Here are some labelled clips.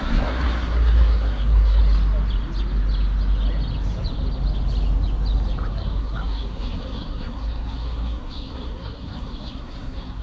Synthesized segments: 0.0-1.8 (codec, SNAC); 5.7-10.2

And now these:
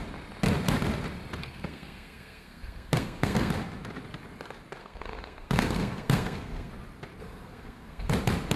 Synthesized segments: 1.4-3.5 (codec, SNAC); 4.8-6.7; 7.2-8.1

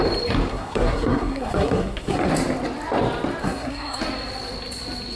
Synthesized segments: 0.5-2.3 (codec, SNAC); 3.4-4.0

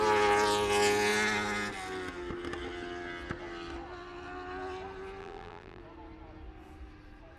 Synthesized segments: 5.2-5.8 (vocoder, BigVGAN v2)